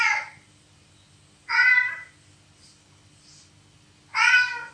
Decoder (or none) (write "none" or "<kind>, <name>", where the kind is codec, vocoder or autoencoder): none